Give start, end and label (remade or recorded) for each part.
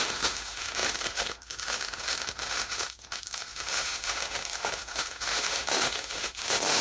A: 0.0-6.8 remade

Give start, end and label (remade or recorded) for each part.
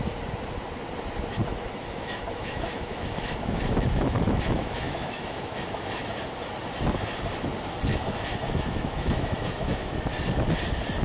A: 0.0-1.4 recorded; 1.4-6.1 remade; 6.1-7.9 recorded; 7.9-10.1 remade; 10.1-11.0 recorded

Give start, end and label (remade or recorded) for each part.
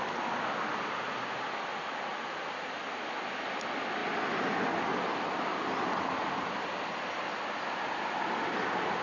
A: 0.0-9.0 recorded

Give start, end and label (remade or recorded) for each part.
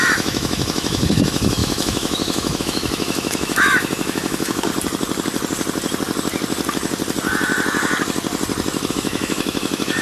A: 0.0-4.7 remade; 4.7-8.9 recorded; 8.9-10.0 remade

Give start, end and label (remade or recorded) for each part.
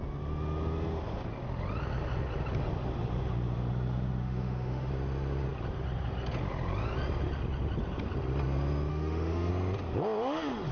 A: 0.0-4.2 recorded; 4.2-4.9 remade; 4.9-8.9 recorded; 8.9-9.5 remade; 9.5-10.7 recorded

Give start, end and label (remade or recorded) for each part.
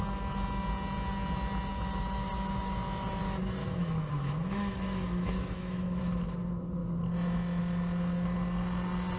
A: 0.0-3.6 recorded; 3.6-6.0 remade; 6.0-9.2 recorded